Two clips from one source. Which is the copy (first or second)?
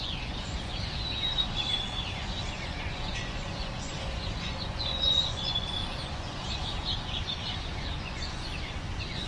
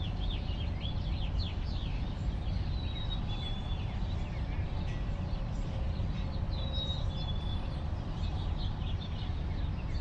first